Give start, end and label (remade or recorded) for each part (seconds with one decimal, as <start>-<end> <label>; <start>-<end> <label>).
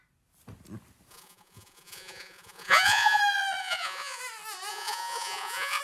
0.0-1.1 recorded; 1.1-3.2 remade; 3.2-3.6 recorded; 3.6-4.2 remade; 4.2-4.7 recorded; 4.7-5.8 remade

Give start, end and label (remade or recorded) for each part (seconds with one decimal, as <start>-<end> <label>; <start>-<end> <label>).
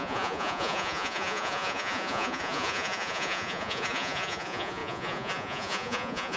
0.0-6.4 remade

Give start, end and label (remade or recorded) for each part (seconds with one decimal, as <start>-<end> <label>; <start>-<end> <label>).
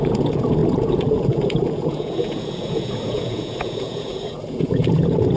0.0-5.4 remade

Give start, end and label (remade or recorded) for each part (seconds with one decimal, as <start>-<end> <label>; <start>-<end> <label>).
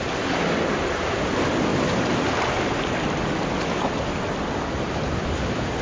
0.0-5.8 recorded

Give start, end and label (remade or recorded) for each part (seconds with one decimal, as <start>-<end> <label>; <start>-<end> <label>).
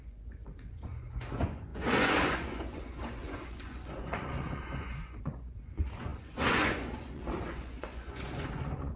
0.0-9.0 remade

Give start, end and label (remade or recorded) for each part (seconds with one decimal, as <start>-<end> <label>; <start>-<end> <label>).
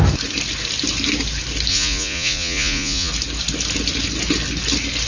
0.0-1.7 recorded; 1.7-3.1 remade; 3.1-5.1 recorded